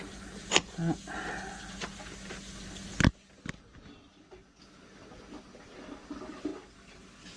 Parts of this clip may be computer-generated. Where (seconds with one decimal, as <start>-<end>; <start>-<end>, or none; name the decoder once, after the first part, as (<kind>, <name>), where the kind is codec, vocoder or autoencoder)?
none